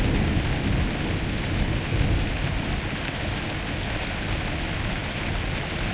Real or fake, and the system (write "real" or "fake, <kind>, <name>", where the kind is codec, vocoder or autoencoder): real